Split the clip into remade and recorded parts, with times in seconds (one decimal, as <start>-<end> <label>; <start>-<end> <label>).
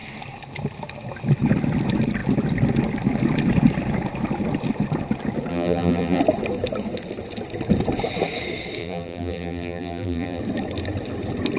0.0-5.5 recorded; 5.5-6.2 remade; 6.2-8.8 recorded; 8.8-10.4 remade; 10.4-11.6 recorded